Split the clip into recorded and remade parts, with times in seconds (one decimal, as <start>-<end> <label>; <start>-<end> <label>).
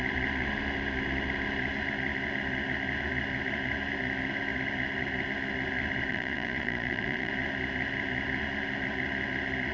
0.0-6.1 recorded; 6.1-7.3 remade; 7.3-9.7 recorded